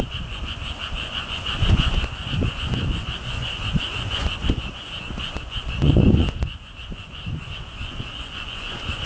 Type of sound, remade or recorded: remade